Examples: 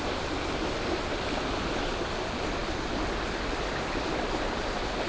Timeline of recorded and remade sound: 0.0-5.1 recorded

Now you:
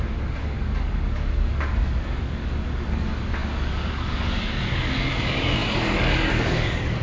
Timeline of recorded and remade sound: 0.0-7.0 remade